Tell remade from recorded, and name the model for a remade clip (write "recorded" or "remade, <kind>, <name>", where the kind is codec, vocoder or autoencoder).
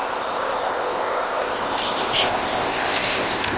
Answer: remade, codec, ZipCodec